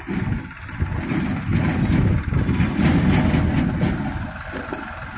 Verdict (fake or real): real